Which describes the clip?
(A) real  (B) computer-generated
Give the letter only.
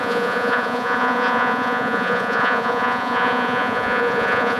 B